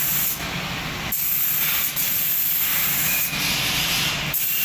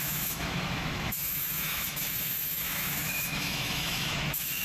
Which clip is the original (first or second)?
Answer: first